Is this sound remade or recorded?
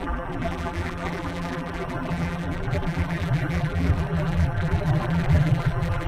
remade